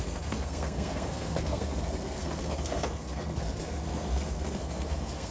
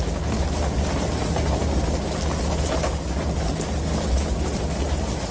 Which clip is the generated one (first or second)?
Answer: first